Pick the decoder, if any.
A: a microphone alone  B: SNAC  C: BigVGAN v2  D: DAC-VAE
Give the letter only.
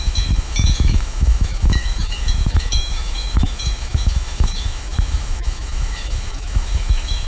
D